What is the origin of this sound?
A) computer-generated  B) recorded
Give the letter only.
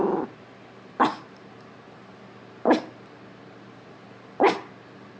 B